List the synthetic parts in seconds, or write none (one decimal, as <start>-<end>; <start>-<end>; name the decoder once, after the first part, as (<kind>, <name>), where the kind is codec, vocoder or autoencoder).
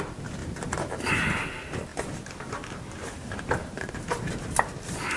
0.4-1.1 (vocoder, BigVGAN v2); 1.9-4.3